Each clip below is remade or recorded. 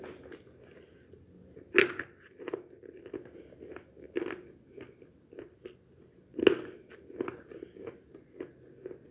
recorded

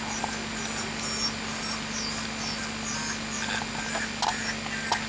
recorded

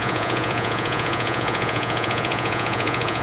remade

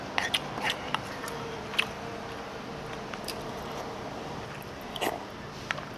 recorded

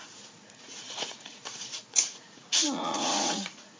remade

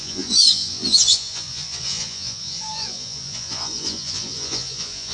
remade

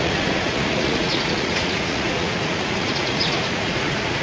remade